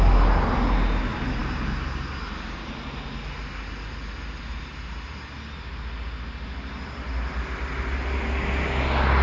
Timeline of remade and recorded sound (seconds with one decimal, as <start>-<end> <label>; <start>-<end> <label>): 0.0-9.2 recorded